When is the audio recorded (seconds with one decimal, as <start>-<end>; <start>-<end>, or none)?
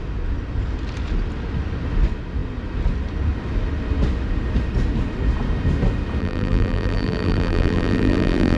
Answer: 0.0-6.2